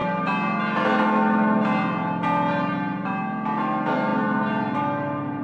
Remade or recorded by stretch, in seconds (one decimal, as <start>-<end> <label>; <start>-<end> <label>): 0.0-5.4 recorded